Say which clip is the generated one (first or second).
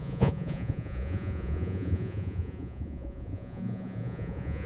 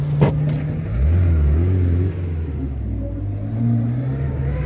first